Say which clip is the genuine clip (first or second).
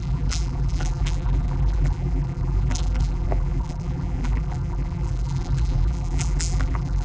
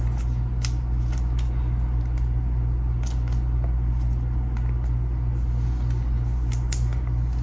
second